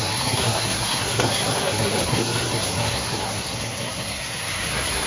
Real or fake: fake